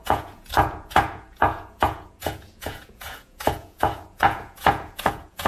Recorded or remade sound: remade